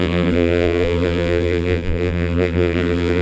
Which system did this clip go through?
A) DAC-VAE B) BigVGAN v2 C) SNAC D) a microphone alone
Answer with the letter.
B